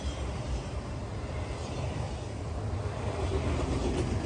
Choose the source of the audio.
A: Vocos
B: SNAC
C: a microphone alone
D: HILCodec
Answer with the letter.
C